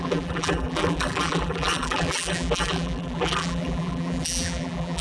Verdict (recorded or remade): remade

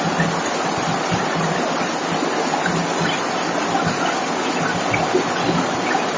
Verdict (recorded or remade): recorded